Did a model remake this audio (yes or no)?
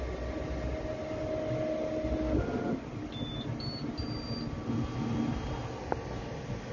no